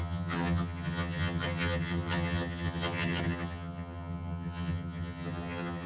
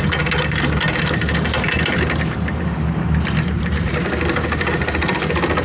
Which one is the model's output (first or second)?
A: first